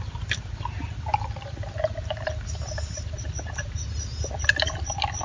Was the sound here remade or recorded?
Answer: recorded